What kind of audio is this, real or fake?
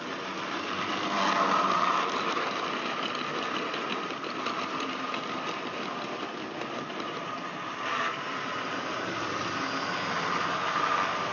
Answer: real